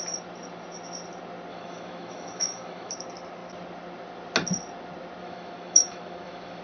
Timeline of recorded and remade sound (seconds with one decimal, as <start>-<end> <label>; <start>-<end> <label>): 0.0-1.5 recorded; 1.5-2.9 remade; 2.9-5.2 recorded; 5.2-6.6 remade